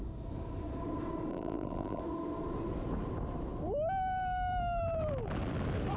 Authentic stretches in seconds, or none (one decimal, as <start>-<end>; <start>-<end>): 0.0-1.3; 2.0-6.0